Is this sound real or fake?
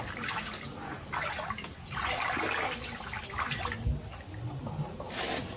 real